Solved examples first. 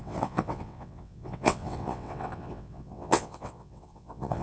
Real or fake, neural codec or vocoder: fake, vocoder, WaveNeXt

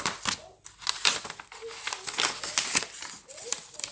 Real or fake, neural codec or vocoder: real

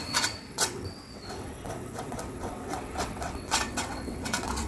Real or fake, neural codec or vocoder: fake, vocoder, WaveNeXt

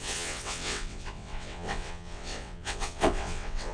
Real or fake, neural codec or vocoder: fake, vocoder, WaveNeXt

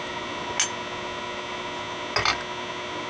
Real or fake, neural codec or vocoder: real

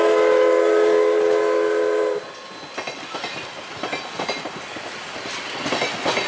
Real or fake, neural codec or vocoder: real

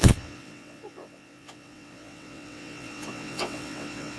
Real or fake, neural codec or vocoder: fake, vocoder, WaveNeXt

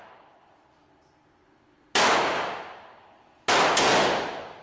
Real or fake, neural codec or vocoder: real